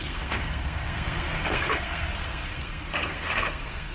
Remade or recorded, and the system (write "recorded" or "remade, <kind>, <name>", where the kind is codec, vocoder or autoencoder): remade, codec, SNAC